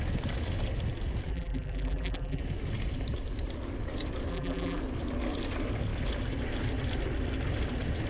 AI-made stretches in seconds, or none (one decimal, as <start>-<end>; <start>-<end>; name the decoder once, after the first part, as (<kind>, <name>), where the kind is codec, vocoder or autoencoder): 1.3-2.4 (vocoder, BigVGAN v2); 4.3-4.8